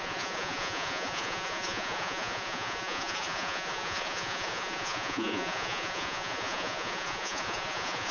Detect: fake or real fake